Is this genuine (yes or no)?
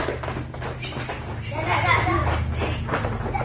yes